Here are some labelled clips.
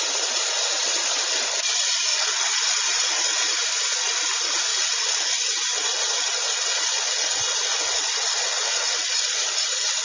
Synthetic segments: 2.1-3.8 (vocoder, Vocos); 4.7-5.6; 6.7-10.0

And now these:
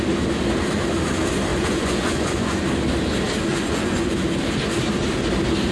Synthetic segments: 1.5-2.6 (vocoder, Vocos); 3.5-4.1

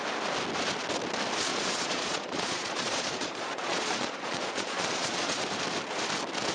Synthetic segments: 1.5-5.4 (vocoder, Vocos)

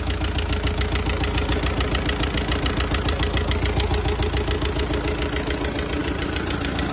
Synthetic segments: 6.0-6.9 (vocoder, BigVGAN v2)

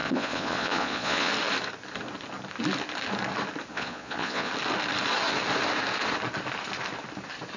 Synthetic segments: 0.0-1.3 (vocoder, Vocos); 3.7-4.5

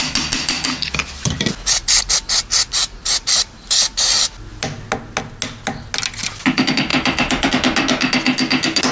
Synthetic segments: 2.5-3.1 (vocoder, BigVGAN v2); 6.9-7.5